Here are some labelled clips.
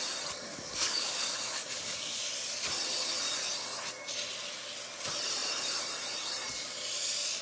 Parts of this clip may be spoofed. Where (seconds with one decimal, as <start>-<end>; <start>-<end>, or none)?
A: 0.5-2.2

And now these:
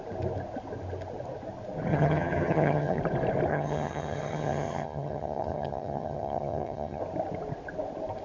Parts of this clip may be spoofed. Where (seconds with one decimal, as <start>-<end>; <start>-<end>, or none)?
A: 1.9-3.0; 3.5-7.0

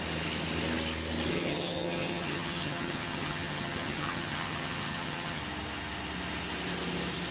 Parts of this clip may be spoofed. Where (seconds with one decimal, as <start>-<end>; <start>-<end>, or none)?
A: 1.3-5.4

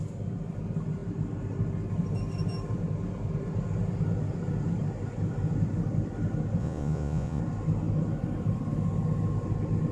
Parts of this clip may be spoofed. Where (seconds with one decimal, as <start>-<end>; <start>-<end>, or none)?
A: 6.6-7.4

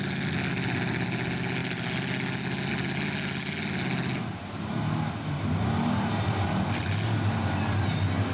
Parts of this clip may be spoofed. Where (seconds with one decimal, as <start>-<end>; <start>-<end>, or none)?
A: none